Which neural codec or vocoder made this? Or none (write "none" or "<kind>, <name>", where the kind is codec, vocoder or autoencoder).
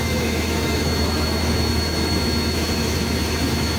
autoencoder, DAC-VAE